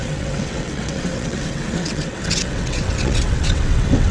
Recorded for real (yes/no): no